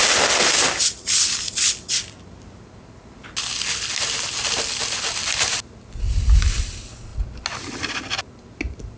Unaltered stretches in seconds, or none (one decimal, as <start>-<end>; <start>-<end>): 0.0-9.0